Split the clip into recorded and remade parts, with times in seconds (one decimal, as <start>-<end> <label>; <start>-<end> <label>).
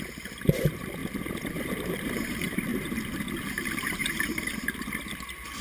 0.0-1.0 remade; 1.0-1.7 recorded; 1.7-2.7 remade; 2.7-3.4 recorded; 3.4-5.6 remade